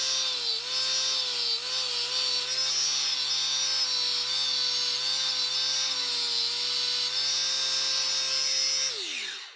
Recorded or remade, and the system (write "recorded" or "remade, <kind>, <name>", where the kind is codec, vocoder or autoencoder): recorded